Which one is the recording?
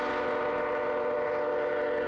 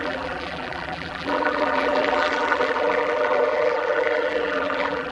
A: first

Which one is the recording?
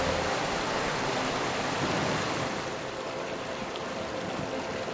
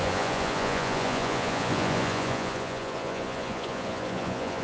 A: first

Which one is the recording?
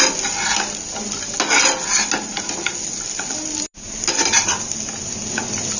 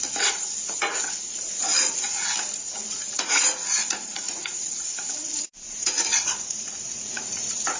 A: first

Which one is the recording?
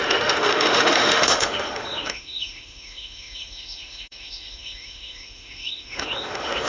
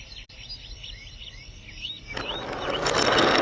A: second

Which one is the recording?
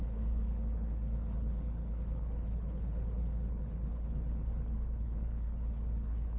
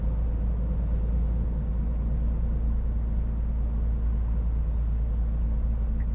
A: second